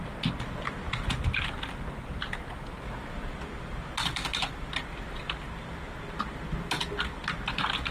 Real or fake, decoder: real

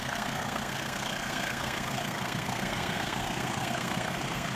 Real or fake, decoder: fake, codec, SNAC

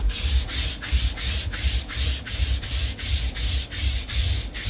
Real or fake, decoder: real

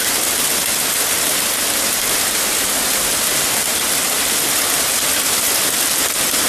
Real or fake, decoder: real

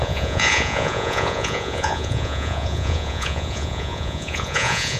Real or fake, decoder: fake, vocoder, Vocos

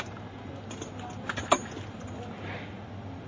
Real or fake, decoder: real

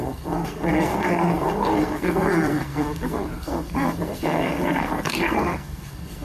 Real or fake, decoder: fake, codec, SNAC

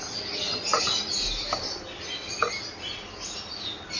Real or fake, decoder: real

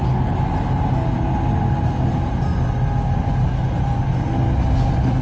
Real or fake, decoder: real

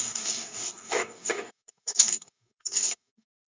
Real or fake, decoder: fake, codec, DAC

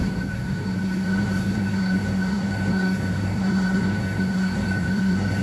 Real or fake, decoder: fake, codec, SNAC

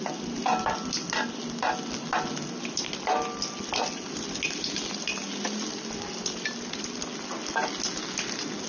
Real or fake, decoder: real